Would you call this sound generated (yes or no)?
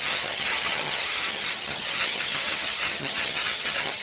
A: yes